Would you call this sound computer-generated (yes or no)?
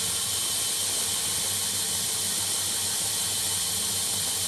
no